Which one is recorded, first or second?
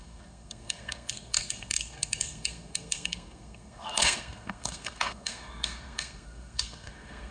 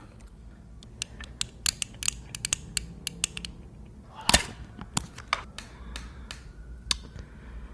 second